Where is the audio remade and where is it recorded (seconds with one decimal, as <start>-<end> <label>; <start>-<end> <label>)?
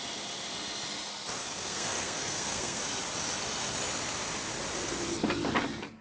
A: 0.0-1.4 recorded; 1.4-2.8 remade; 2.8-6.0 recorded